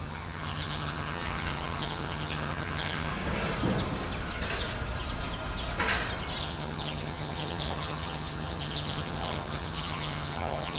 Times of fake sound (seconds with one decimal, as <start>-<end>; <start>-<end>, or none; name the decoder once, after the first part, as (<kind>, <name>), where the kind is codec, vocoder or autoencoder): 0.0-3.1 (vocoder, HiFi-GAN); 6.4-10.8

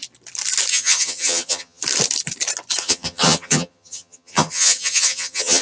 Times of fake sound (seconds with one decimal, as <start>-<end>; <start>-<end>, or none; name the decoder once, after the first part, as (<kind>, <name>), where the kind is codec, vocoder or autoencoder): 0.7-1.8 (vocoder, HiFi-GAN); 2.8-5.6

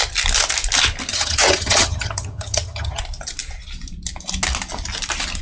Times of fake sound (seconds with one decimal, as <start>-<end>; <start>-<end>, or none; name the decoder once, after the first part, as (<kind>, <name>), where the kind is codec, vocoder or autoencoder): 1.1-3.0 (vocoder, HiFi-GAN)

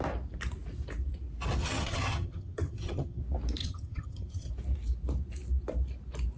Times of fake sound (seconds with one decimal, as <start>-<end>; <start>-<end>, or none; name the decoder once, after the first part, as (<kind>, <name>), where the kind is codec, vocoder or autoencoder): 1.6-3.2 (vocoder, HiFi-GAN); 3.6-4.5

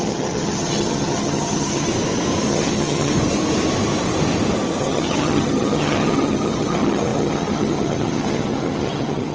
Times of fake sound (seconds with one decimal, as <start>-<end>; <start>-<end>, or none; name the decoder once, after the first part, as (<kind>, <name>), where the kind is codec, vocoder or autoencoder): 0.0-1.9 (vocoder, HiFi-GAN); 2.5-3.1; 4.8-9.3

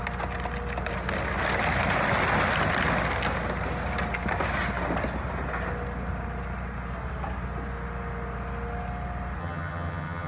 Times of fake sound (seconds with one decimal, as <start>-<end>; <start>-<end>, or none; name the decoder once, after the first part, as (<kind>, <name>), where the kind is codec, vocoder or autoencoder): 9.4-10.3 (vocoder, HiFi-GAN)

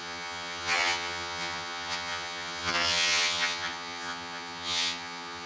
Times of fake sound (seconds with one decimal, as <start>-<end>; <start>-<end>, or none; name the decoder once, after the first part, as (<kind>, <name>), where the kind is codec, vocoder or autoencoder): 0.0-5.5 (vocoder, HiFi-GAN)